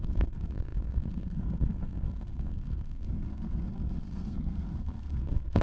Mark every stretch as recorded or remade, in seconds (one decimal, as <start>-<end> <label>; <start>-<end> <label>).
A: 0.0-5.6 remade